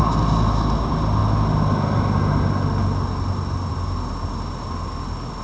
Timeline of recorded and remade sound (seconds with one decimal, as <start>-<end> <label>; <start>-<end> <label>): 0.0-5.4 recorded